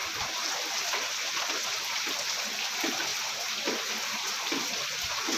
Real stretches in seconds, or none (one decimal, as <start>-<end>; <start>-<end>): 0.0-5.4